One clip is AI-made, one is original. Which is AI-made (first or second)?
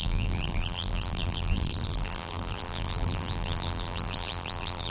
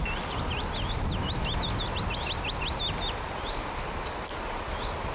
first